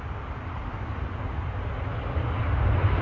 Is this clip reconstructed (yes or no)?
no